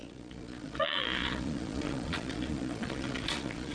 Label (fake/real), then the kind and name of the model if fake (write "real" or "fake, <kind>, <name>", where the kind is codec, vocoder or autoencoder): fake, vocoder, Vocos